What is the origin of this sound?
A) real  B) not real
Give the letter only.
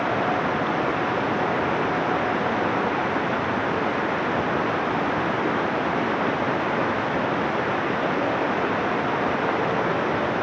A